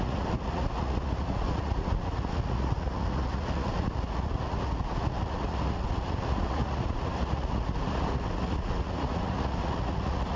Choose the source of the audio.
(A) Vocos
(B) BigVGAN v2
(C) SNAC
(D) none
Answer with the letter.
A